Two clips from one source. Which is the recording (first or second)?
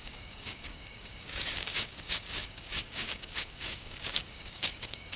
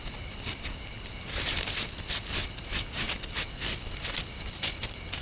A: second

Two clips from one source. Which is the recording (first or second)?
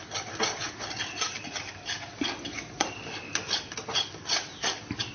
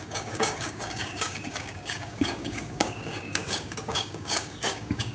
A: first